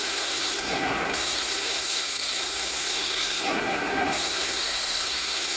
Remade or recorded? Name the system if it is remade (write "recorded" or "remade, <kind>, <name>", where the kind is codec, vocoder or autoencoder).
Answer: remade, codec, SNAC